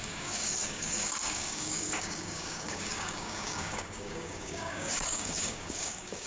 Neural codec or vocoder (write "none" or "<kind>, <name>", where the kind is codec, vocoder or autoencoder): codec, DAC